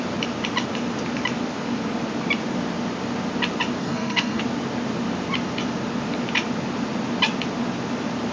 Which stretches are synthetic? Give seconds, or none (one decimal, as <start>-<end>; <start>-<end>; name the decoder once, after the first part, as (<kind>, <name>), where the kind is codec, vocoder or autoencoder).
3.8-4.4 (codec, SNAC)